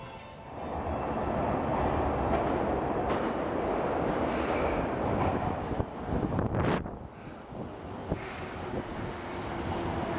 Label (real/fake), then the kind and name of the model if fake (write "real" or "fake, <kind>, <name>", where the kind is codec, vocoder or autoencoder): real